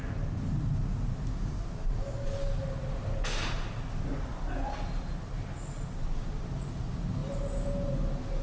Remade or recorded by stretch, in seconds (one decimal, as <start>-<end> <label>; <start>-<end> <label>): 0.0-8.4 recorded